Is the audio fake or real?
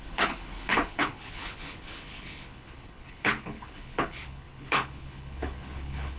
fake